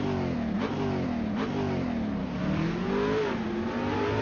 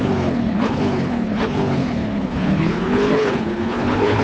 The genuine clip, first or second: first